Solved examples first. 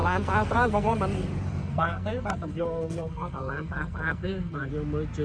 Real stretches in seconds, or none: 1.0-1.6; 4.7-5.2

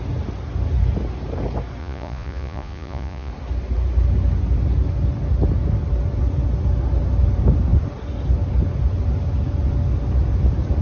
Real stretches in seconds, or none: 0.0-1.8; 3.3-10.8